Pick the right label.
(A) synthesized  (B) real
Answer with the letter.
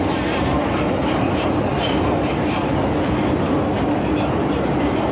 B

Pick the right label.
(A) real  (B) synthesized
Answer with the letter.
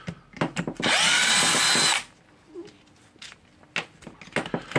A